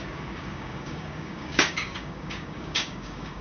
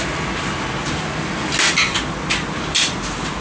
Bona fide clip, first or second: second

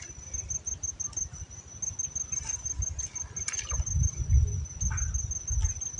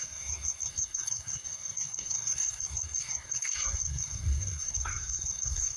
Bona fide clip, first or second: first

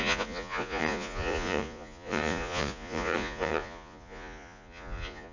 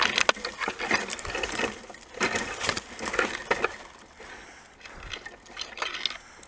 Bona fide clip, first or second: second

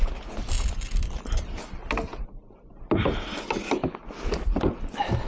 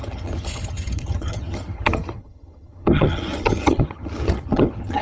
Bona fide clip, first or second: first